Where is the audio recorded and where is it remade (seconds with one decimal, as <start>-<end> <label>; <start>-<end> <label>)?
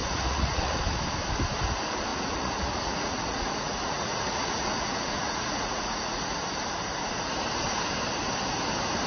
0.0-0.8 remade; 0.8-2.1 recorded; 2.1-6.2 remade; 6.2-9.1 recorded